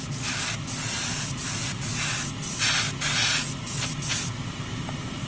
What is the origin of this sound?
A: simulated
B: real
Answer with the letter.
B